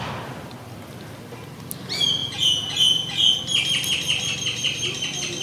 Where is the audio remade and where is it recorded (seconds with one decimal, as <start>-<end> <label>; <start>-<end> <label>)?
0.0-2.2 recorded; 2.2-3.4 remade; 3.4-5.4 recorded